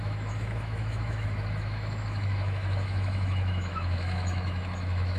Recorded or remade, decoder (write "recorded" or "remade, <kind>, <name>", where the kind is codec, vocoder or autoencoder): remade, autoencoder, DAC-VAE